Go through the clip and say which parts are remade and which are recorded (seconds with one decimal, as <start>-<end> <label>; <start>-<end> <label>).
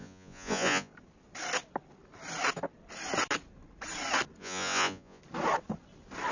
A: 0.0-0.9 remade; 0.9-4.4 recorded; 4.4-5.2 remade; 5.2-6.3 recorded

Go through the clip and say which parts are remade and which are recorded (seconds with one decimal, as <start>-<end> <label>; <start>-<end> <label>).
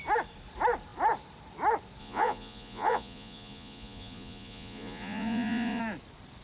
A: 0.0-2.0 recorded; 2.0-5.8 remade; 5.8-6.4 recorded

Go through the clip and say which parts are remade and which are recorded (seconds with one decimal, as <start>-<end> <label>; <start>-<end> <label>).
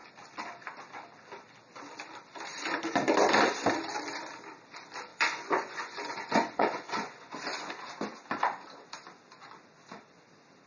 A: 0.0-5.1 recorded; 5.1-7.7 remade; 7.7-10.7 recorded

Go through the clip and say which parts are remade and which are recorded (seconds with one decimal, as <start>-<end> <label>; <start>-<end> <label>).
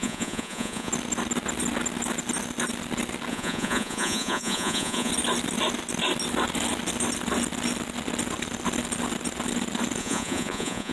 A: 0.0-0.9 remade; 0.9-3.3 recorded; 3.3-5.1 remade; 5.1-10.0 recorded; 10.0-10.9 remade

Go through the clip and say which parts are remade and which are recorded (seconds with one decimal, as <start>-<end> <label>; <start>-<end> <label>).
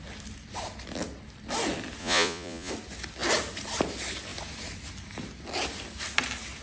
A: 0.0-2.0 recorded; 2.0-2.7 remade; 2.7-6.6 recorded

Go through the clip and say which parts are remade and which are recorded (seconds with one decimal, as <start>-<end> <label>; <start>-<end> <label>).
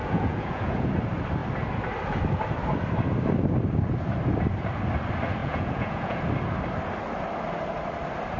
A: 0.0-0.9 remade; 0.9-5.4 recorded; 5.4-6.2 remade; 6.2-8.4 recorded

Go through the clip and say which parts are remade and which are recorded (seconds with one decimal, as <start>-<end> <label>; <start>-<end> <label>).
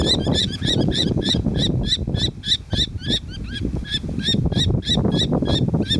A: 0.0-0.4 recorded; 0.4-1.6 remade; 1.6-6.0 recorded